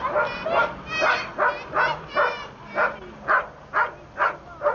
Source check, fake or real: real